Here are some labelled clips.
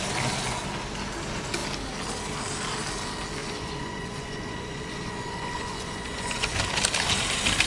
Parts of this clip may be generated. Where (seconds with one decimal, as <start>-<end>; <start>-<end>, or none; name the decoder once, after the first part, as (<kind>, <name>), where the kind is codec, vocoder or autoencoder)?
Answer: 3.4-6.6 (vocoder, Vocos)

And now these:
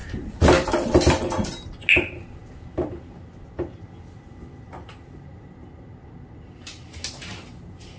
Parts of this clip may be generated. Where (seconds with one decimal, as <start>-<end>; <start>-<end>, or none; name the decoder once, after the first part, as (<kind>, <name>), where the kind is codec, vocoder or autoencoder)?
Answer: none

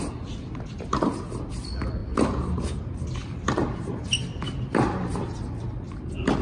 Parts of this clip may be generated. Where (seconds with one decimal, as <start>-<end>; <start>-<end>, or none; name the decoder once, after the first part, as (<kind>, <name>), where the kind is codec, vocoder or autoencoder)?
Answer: 3.2-3.9 (vocoder, BigVGAN v2)

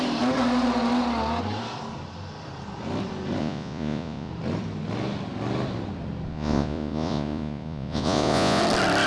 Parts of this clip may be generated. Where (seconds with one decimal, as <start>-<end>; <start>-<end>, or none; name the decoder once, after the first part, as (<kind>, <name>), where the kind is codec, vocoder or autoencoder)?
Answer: 3.4-4.3 (vocoder, Vocos); 6.3-8.6